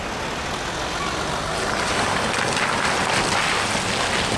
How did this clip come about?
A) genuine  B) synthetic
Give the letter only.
A